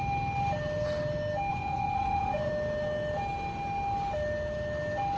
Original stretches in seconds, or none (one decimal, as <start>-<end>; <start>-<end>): 0.0-1.5; 2.5-5.2